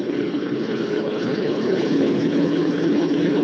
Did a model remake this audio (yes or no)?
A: yes